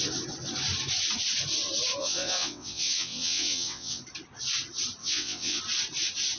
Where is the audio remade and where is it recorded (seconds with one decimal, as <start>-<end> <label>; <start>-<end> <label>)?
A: 0.0-2.0 recorded; 2.0-4.0 remade; 4.0-5.0 recorded; 5.0-5.6 remade; 5.6-6.4 recorded